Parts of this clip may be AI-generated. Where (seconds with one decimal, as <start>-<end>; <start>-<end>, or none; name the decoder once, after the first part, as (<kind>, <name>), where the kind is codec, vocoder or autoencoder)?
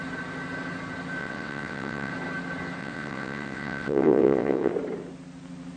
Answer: 1.2-2.1 (vocoder, WaveNeXt); 2.8-4.7